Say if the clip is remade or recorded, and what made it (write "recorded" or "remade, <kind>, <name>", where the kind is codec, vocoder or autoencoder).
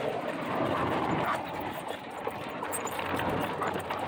remade, vocoder, BigVGAN v2